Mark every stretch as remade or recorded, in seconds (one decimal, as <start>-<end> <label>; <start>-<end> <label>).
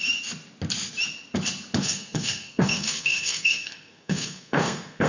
0.0-1.8 recorded; 1.8-5.1 remade